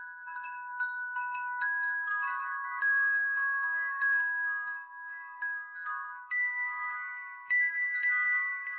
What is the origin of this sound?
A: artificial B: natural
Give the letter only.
A